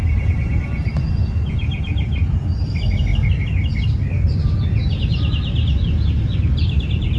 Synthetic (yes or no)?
no